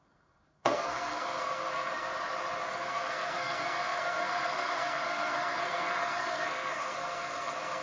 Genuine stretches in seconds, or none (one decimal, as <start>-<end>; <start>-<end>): 2.1-2.7